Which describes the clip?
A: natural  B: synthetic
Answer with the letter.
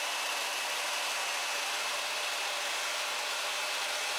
A